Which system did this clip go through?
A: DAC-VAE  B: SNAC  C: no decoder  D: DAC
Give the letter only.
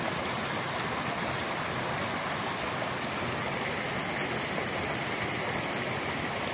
C